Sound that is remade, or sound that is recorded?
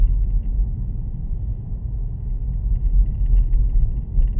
recorded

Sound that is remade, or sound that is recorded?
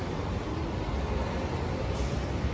recorded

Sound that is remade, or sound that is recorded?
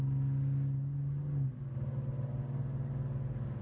recorded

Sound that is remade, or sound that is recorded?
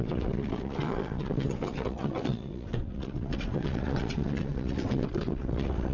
remade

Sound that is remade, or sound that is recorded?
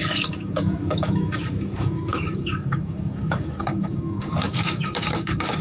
remade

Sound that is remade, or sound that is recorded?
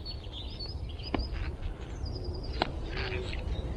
recorded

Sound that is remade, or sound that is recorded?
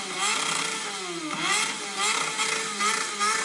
recorded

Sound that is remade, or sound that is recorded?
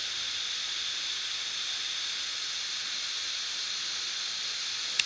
recorded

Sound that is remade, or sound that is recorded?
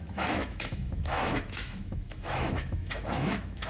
remade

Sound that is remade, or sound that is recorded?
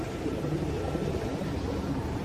recorded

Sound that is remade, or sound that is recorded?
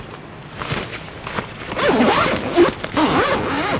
recorded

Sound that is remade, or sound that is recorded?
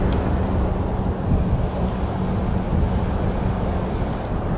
recorded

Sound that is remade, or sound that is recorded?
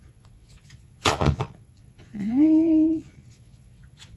remade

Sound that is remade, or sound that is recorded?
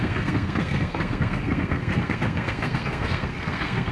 remade